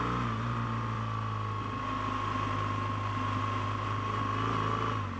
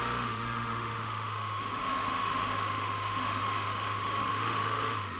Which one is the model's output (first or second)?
second